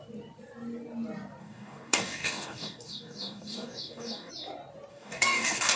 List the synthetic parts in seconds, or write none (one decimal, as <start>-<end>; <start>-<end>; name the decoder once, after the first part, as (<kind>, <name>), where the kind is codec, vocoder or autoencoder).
1.4-4.3 (codec, DAC); 4.9-5.8